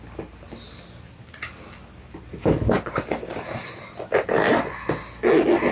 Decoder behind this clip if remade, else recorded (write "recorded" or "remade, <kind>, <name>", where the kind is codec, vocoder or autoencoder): recorded